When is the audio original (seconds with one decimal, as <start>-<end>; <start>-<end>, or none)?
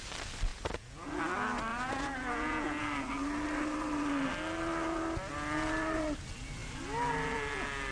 0.0-0.5; 1.2-1.7; 2.8-7.9